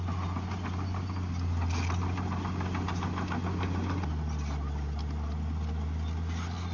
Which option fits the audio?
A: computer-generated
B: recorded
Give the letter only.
B